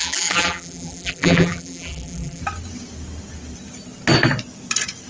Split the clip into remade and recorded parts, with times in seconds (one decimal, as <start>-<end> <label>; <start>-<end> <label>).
0.0-2.4 remade; 2.4-5.1 recorded